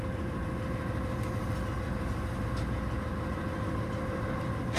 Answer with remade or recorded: recorded